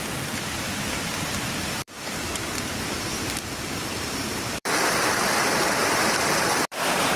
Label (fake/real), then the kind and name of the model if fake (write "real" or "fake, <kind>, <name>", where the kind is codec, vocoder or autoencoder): fake, vocoder, BigVGAN v2